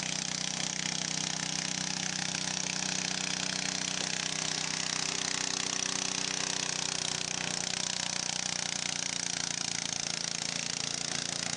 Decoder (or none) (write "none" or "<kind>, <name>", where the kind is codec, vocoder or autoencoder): none